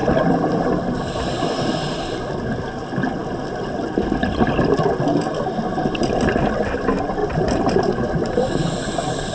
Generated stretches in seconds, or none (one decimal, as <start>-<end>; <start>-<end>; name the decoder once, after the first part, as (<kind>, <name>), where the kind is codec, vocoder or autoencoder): 7.2-7.8 (vocoder, BigVGAN v2)